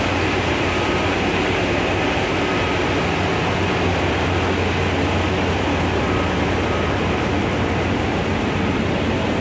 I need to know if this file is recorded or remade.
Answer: recorded